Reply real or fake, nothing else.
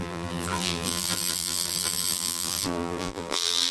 fake